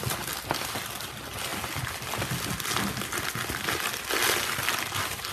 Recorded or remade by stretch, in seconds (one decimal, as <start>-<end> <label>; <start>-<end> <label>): 0.0-5.3 recorded